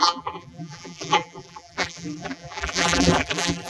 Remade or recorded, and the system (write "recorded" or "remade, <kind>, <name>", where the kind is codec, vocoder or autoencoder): remade, vocoder, BigVGAN v2